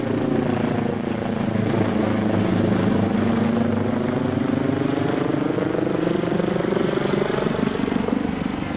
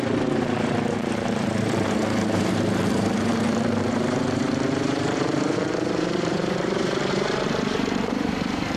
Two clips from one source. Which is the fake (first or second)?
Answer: second